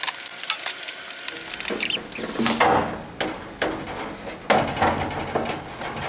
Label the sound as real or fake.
real